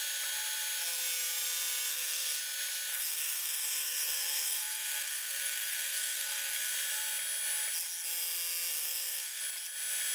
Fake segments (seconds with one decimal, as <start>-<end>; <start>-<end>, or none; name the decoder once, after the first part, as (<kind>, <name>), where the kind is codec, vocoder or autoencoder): 1.9-2.4 (codec, SNAC); 2.9-6.7; 8.7-9.4